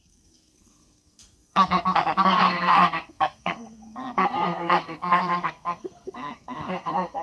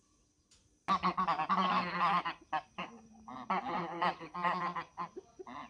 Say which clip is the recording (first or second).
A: second